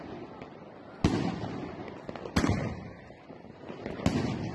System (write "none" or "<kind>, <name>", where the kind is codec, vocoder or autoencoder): none